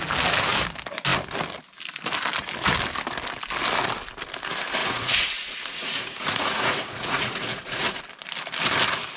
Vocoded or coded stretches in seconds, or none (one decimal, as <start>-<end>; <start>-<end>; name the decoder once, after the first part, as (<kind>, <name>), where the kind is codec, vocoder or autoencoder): 4.8-8.0 (vocoder, Vocos)